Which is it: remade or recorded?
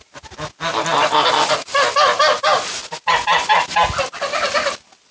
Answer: recorded